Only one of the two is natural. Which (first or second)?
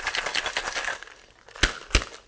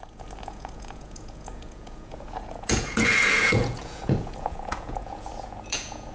first